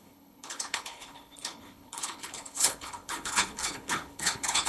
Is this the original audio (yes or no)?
no